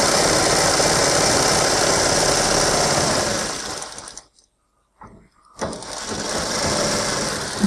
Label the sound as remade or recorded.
recorded